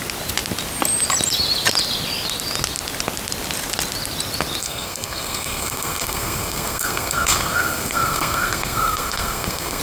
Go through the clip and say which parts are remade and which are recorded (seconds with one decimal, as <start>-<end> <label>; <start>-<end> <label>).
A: 0.0-4.6 recorded; 4.6-9.8 remade